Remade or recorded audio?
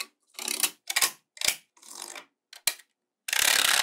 recorded